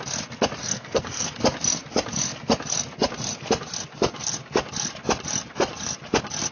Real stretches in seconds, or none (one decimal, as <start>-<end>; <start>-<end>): 0.0-0.6; 1.4-6.5